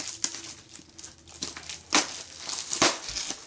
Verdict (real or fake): real